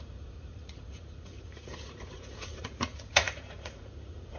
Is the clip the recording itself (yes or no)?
no